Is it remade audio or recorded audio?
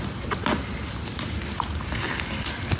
recorded